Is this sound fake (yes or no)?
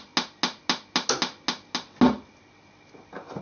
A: no